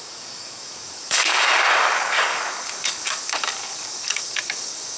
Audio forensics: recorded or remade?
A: remade